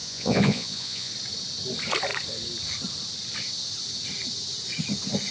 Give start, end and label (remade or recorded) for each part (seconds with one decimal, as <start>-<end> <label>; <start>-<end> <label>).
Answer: 0.0-1.1 remade; 1.1-5.3 recorded